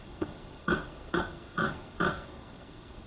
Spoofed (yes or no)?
yes